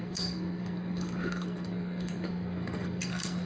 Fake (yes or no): yes